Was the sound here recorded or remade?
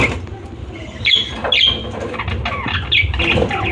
recorded